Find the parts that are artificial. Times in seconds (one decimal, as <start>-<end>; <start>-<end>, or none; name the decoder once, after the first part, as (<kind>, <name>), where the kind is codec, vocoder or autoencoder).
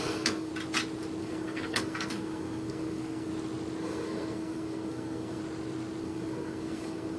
0.0-0.5 (codec, SNAC); 1.2-3.3; 3.8-5.4; 6.0-7.2